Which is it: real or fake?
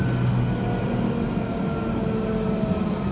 real